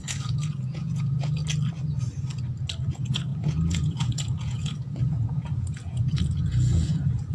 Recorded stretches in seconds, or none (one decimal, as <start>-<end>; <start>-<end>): 1.4-2.9